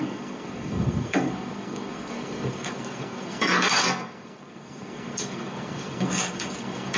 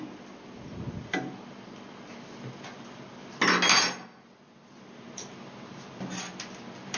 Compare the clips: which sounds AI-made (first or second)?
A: first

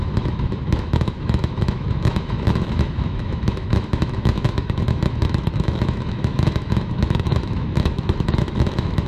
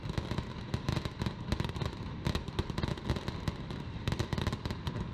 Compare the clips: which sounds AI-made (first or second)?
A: first